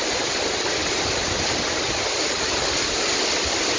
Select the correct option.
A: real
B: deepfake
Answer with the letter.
A